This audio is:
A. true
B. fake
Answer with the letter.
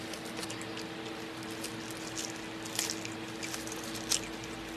A